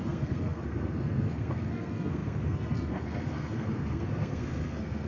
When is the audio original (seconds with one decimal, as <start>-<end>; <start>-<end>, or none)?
none

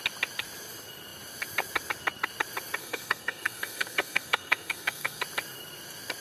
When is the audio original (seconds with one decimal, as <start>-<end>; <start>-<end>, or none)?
0.0-2.8; 5.2-6.2

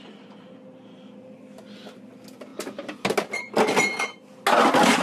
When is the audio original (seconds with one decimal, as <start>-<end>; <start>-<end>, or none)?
0.0-5.0

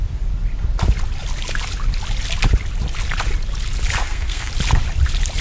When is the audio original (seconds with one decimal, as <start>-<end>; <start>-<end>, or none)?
0.0-4.0; 4.5-5.4

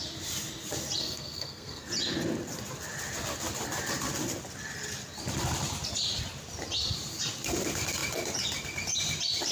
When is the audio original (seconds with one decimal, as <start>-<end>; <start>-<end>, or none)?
0.0-1.0; 1.9-9.5

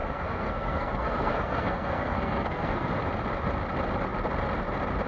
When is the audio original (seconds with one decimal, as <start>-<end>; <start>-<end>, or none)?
2.9-5.1

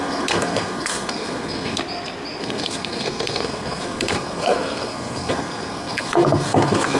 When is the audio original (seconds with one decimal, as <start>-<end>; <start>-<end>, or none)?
1.8-2.4